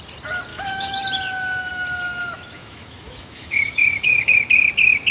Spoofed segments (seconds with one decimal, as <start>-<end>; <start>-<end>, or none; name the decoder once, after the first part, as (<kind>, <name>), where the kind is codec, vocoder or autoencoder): 0.5-1.0 (autoencoder, DAC-VAE); 2.6-4.4